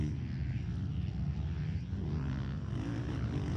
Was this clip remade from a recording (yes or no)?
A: no